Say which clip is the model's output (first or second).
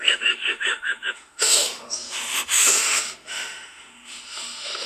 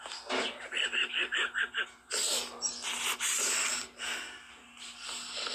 first